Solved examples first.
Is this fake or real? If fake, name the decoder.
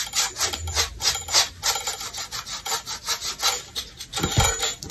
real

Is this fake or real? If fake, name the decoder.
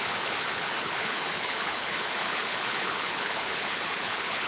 fake, codec, HILCodec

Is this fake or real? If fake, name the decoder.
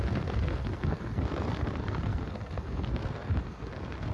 fake, codec, SNAC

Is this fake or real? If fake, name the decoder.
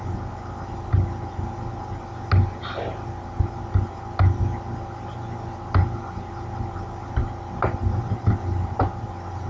real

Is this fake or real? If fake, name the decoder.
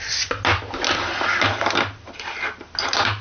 real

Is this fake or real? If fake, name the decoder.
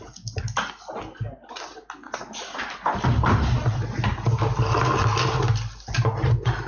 real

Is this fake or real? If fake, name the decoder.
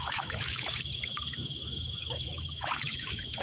fake, autoencoder, DAC-VAE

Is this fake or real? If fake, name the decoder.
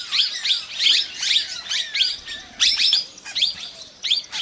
real